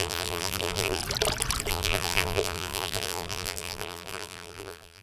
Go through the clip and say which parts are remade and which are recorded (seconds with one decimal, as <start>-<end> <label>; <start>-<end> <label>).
0.0-1.0 remade; 1.0-1.7 recorded; 1.7-5.0 remade